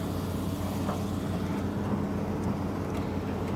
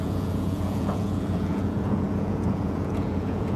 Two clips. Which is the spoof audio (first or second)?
second